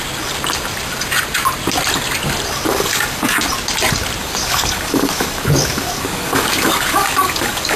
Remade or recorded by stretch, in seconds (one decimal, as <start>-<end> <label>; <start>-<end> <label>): 0.0-2.7 recorded; 2.7-3.4 remade; 3.4-4.2 recorded; 4.2-7.8 remade